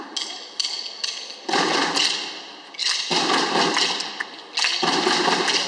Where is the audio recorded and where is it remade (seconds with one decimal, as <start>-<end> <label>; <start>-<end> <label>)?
0.0-5.7 recorded